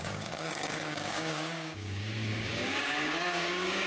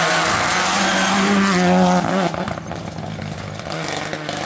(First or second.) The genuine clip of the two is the second